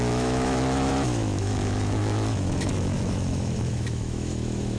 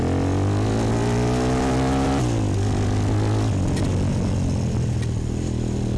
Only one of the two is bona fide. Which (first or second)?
second